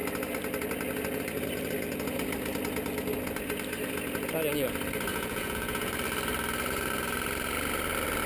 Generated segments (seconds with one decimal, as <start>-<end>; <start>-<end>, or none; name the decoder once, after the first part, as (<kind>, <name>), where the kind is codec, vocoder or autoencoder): 5.1-5.9 (vocoder, Vocos)